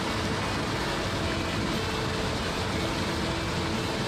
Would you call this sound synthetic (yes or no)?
no